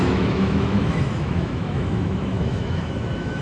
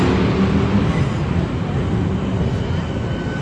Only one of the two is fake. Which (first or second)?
first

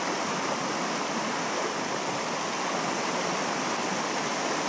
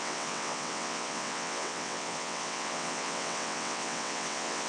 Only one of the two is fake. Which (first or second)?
second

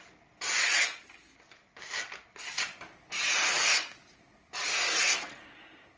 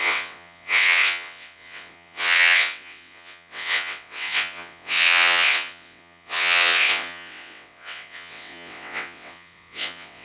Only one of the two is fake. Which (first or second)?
second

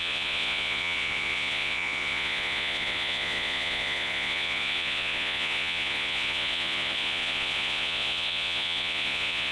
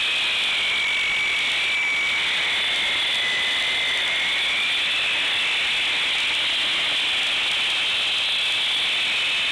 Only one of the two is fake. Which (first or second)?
first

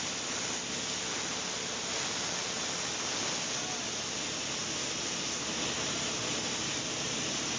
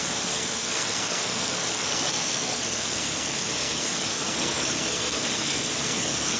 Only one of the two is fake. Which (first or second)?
second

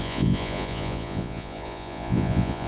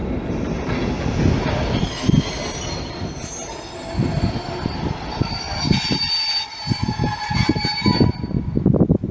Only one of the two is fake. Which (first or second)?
first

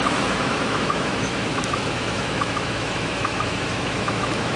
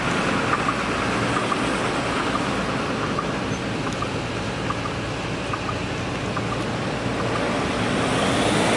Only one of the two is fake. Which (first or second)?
first